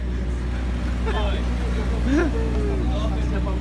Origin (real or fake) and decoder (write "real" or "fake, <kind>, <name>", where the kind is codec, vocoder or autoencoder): real